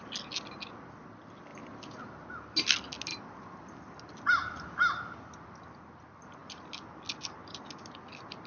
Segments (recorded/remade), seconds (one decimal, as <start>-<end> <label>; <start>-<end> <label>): 0.0-8.5 recorded